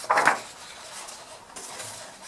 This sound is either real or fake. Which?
real